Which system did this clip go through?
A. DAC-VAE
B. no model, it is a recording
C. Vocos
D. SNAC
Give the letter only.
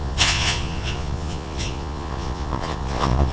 C